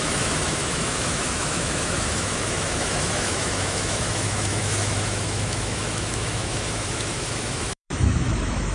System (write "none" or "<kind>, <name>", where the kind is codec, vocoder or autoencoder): autoencoder, DAC-VAE